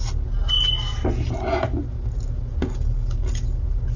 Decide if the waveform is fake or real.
real